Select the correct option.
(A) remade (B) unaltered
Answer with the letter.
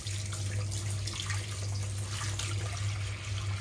B